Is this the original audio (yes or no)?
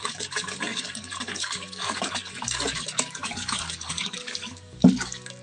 no